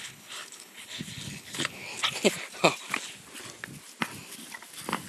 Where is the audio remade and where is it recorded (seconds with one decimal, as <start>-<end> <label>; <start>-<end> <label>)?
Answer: 0.0-1.9 remade; 1.9-5.1 recorded